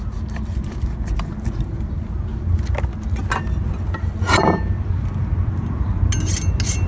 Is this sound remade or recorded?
recorded